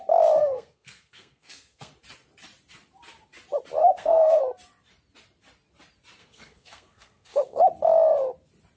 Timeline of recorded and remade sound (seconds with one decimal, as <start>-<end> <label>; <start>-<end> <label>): 0.0-0.4 recorded; 0.4-1.9 remade; 1.9-3.8 recorded; 3.8-4.4 remade; 4.4-6.2 recorded; 6.2-7.6 remade; 7.6-8.8 recorded